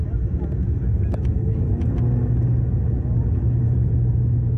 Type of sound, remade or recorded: recorded